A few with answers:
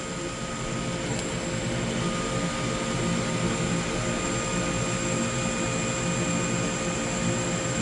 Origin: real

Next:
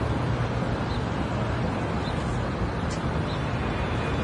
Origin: real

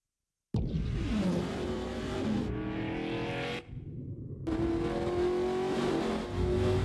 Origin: real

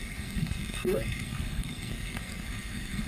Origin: fake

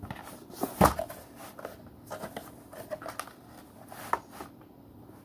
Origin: real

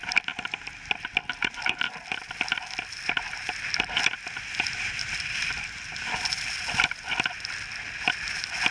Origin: real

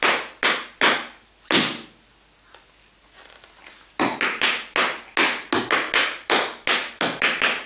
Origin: real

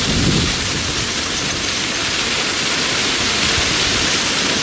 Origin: real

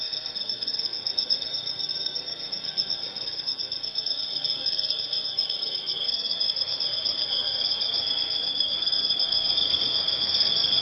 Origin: fake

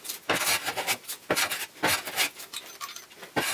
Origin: real